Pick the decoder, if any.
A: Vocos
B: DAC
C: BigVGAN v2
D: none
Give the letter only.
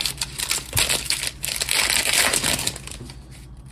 D